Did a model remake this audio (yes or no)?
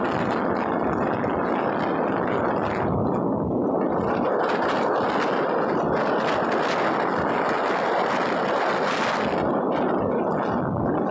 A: no